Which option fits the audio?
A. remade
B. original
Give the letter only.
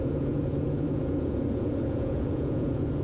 A